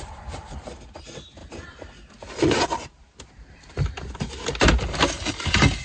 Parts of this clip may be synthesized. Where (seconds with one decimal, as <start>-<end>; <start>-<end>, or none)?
none